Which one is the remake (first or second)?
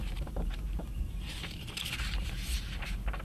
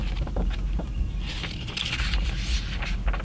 first